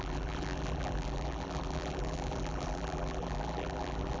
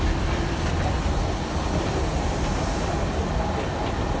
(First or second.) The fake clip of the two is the first